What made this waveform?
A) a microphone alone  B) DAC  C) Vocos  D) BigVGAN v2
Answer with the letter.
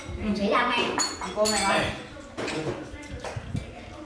A